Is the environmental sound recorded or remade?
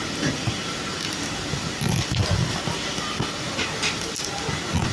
recorded